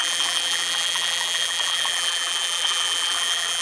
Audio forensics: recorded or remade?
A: remade